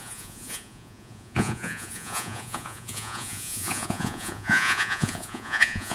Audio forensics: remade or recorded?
remade